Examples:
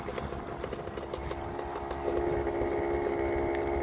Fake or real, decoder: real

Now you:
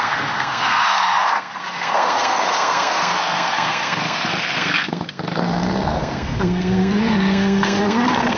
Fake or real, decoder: fake, codec, SNAC